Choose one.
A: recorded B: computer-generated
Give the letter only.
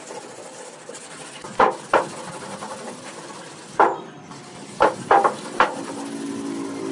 A